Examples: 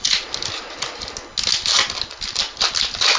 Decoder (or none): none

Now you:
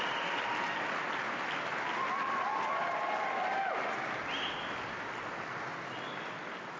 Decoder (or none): none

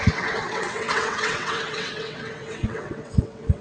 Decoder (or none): vocoder, WaveNeXt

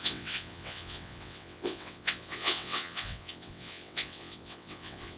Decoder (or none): vocoder, WaveNeXt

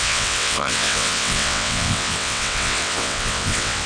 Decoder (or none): vocoder, WaveNeXt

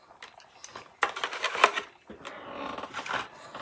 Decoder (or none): none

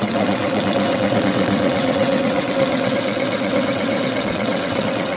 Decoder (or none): vocoder, WaveNeXt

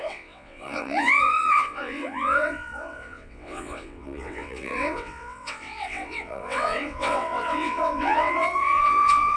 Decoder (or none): vocoder, WaveNeXt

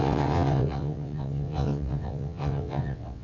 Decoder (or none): vocoder, WaveNeXt